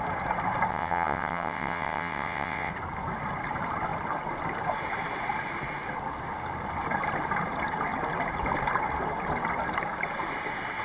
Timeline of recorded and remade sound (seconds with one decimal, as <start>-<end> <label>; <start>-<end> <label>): 0.0-0.7 recorded; 0.7-2.7 remade; 2.7-10.8 recorded